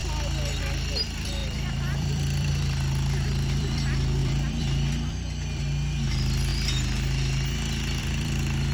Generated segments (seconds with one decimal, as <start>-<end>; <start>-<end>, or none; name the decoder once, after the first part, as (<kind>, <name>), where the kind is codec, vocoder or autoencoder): 0.6-6.5 (vocoder, BigVGAN v2); 8.0-8.7